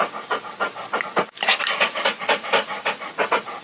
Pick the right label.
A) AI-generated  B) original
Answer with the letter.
B